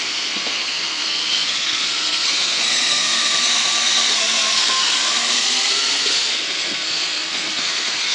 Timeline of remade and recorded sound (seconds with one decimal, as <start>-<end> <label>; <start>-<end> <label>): 0.0-8.1 remade

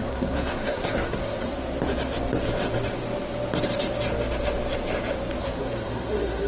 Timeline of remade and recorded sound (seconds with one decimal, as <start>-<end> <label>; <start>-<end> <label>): 0.0-1.5 remade; 1.5-5.4 recorded; 5.4-6.5 remade

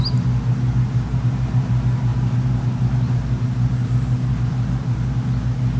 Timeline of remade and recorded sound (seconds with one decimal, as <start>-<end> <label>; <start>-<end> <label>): 0.0-5.8 recorded

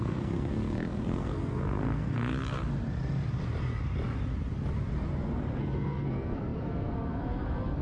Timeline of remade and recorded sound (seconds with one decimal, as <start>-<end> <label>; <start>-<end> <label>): 0.0-2.3 remade; 2.3-5.6 recorded; 5.6-7.8 remade

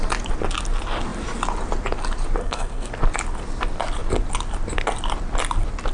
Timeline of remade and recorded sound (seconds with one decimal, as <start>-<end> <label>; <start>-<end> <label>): 0.0-2.4 recorded; 2.4-2.9 remade; 2.9-5.9 recorded